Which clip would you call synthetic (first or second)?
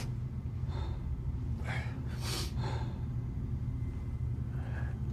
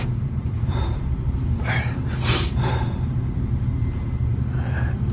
second